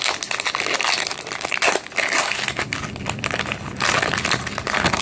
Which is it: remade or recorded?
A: recorded